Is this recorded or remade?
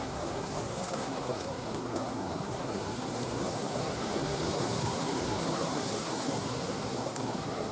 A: remade